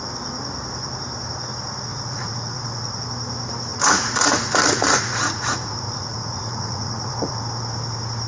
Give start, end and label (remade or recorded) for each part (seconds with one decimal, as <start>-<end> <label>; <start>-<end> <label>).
0.0-1.9 recorded; 1.9-3.0 remade; 3.0-3.7 recorded; 3.7-7.4 remade; 7.4-8.3 recorded